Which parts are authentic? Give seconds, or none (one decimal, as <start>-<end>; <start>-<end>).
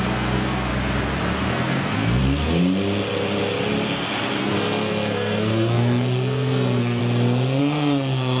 0.7-1.5; 2.2-4.4; 7.0-7.6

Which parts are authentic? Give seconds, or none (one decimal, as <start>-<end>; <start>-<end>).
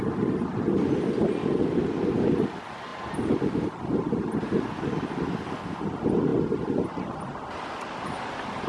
0.0-8.7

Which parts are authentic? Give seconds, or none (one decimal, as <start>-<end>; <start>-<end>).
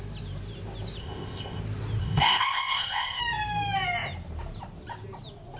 0.0-1.0; 1.6-2.0; 3.2-5.6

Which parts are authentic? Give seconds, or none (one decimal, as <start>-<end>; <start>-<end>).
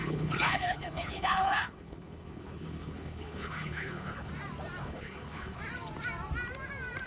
4.3-4.8; 5.6-7.1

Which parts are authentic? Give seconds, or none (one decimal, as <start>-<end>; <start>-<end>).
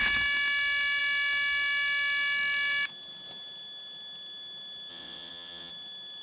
0.0-4.9; 5.7-6.2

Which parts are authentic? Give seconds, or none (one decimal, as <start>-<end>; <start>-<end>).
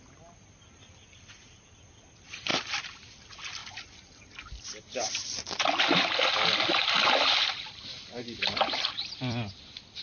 none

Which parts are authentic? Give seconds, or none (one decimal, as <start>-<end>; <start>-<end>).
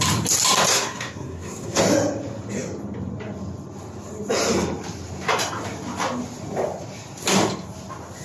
0.0-0.7; 1.8-8.2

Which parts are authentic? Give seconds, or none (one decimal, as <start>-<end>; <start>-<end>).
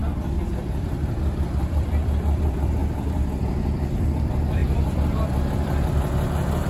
0.0-0.6; 2.8-3.4